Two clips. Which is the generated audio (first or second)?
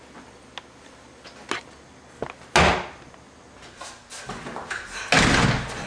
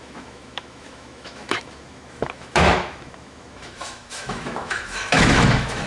second